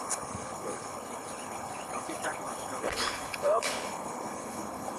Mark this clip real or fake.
fake